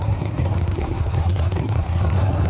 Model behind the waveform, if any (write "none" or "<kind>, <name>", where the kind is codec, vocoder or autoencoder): codec, SNAC